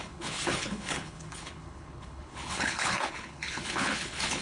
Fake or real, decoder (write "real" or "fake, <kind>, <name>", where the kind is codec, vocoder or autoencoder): fake, codec, HILCodec